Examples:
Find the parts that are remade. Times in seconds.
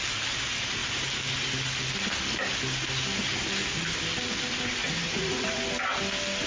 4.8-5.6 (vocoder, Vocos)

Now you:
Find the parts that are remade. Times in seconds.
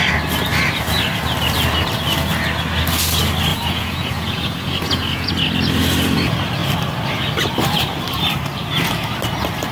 3.5-5.3 (vocoder, Vocos)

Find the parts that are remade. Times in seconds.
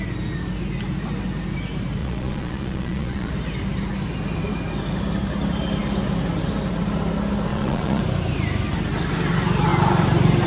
2.0-3.3 (vocoder, Vocos); 7.5-8.0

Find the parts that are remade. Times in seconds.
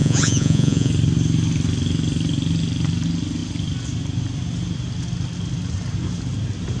0.0-0.9 (vocoder, Vocos)